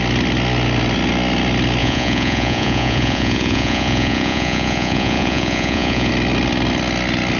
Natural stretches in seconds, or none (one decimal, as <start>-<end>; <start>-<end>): 0.0-1.8; 6.1-7.4